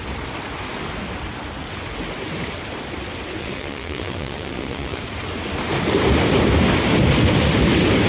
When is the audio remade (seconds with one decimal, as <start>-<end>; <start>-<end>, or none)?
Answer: 3.4-5.0